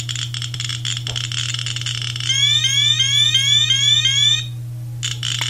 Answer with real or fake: real